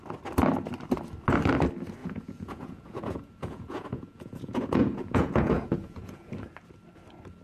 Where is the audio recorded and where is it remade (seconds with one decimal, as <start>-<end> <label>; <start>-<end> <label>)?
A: 0.0-2.0 recorded; 2.0-6.3 remade; 6.3-7.4 recorded